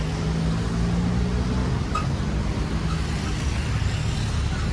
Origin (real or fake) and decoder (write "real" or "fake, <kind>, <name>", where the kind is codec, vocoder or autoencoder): real